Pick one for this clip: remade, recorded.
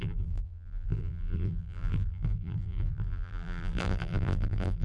remade